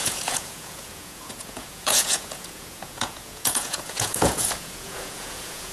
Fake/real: fake